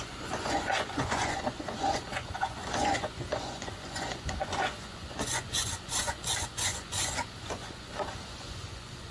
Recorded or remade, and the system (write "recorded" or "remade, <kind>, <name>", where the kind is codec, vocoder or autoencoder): remade, vocoder, Vocos